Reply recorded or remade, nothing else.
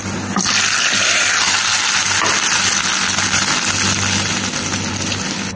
recorded